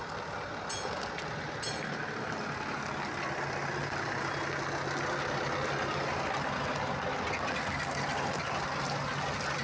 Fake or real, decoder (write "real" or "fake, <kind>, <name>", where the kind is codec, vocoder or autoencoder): real